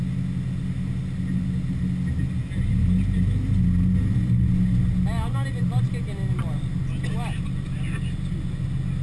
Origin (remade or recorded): recorded